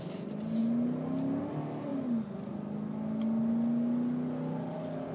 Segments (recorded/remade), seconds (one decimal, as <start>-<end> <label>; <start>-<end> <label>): 0.0-0.6 remade; 0.6-1.4 recorded; 1.4-1.9 remade; 1.9-4.6 recorded; 4.6-5.1 remade